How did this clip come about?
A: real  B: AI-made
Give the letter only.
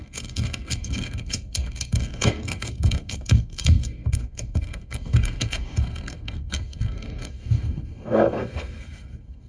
B